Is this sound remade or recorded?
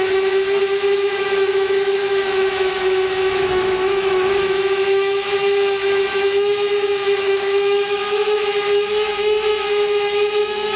remade